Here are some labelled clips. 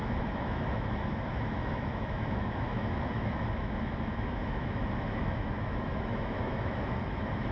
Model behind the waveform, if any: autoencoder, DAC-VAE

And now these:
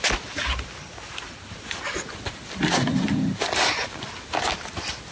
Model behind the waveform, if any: none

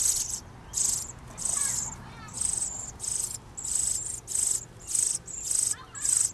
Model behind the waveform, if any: none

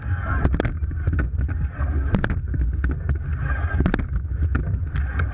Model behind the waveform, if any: none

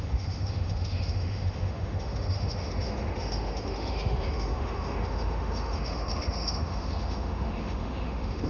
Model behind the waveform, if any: autoencoder, DAC-VAE